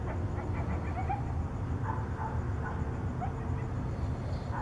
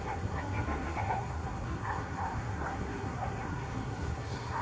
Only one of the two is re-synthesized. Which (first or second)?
second